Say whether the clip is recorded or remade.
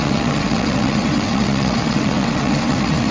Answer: remade